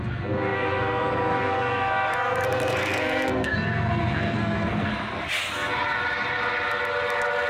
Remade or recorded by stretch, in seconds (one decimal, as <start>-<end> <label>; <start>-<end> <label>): 0.0-4.9 remade; 4.9-7.5 recorded